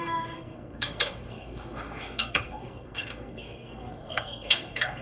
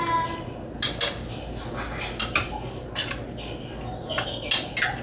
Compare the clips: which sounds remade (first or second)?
first